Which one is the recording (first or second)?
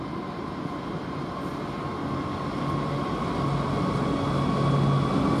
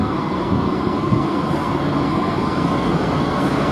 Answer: first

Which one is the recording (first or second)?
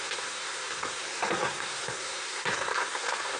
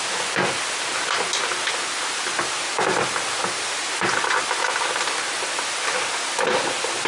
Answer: second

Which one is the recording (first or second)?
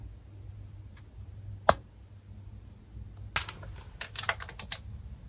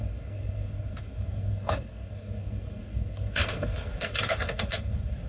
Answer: first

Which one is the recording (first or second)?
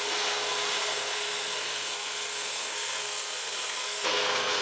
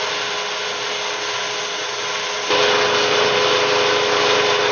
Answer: second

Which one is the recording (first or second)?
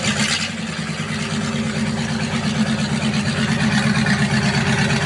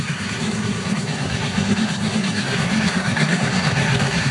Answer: first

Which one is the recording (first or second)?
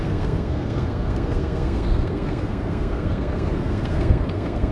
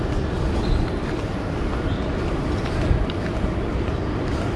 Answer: second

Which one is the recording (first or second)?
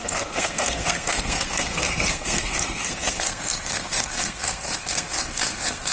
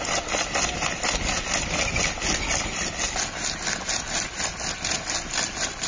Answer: second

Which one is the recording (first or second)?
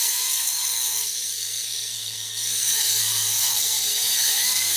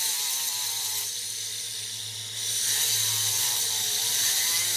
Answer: second